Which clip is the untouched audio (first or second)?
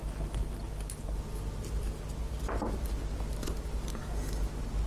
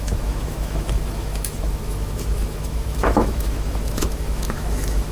first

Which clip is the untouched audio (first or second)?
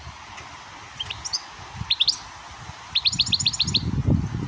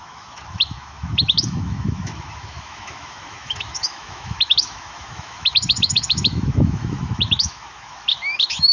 first